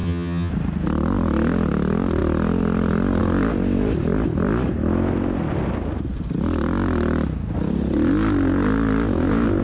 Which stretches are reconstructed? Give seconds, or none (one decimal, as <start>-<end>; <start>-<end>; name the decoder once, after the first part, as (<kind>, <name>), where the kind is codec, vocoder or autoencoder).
0.0-0.5 (vocoder, HiFi-GAN)